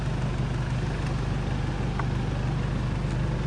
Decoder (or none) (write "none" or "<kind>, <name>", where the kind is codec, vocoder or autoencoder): none